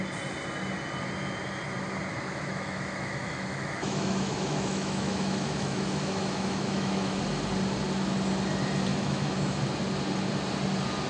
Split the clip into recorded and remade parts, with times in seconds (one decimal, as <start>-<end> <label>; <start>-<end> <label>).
0.0-2.1 recorded; 2.1-7.2 remade; 7.2-8.9 recorded; 8.9-9.6 remade; 9.6-11.1 recorded